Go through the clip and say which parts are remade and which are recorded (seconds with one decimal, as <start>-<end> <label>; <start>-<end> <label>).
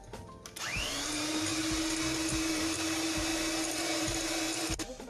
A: 0.0-1.5 remade; 1.5-2.5 recorded; 2.5-3.3 remade; 3.3-3.8 recorded; 3.8-5.1 remade